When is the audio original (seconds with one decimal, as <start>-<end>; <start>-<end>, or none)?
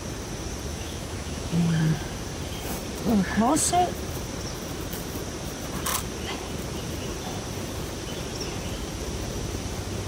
0.0-0.7; 1.8-10.1